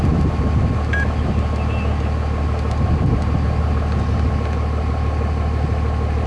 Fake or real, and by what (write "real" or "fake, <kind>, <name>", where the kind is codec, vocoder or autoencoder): real